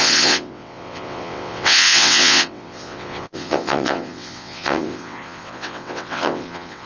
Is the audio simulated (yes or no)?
yes